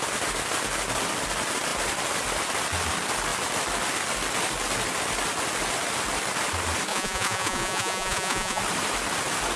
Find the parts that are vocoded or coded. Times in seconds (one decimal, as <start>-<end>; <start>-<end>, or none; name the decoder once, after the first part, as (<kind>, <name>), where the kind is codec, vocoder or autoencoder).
6.9-8.6 (vocoder, Vocos)